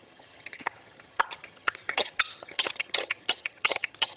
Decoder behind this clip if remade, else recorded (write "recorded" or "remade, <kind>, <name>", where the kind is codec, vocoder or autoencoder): remade, vocoder, HiFi-GAN